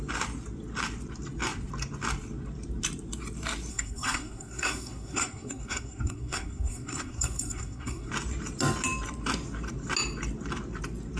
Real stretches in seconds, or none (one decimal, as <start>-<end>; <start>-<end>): 0.0-3.7; 8.1-11.2